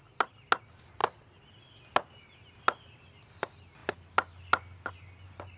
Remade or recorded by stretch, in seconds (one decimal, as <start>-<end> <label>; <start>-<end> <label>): 0.0-5.6 recorded